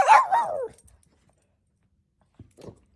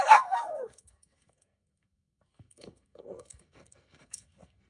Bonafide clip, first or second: first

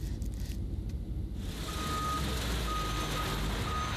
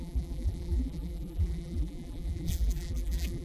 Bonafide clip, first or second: first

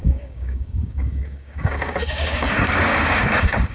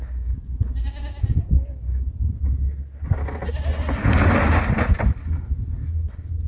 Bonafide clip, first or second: second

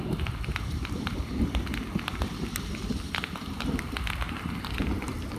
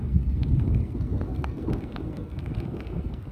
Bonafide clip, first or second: first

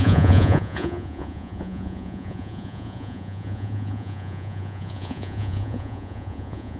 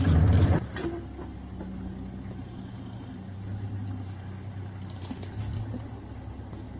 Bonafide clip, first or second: second